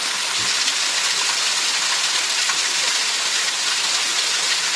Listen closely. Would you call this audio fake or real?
real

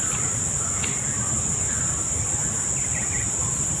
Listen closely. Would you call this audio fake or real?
real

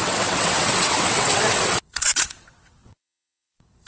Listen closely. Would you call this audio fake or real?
fake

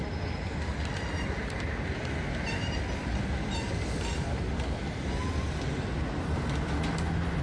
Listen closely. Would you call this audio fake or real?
real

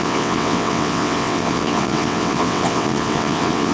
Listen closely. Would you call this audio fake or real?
fake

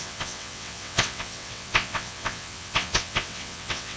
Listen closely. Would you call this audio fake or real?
fake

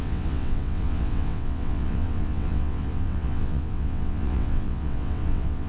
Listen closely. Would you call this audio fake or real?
fake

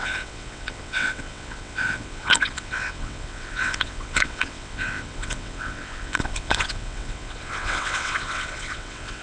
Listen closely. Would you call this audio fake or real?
fake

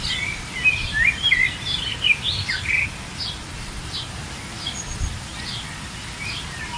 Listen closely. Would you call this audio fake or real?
real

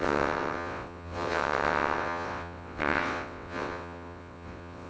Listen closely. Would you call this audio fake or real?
fake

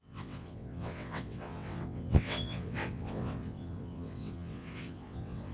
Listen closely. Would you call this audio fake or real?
fake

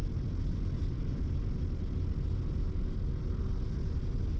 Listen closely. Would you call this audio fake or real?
real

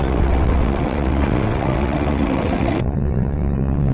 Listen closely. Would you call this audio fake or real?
fake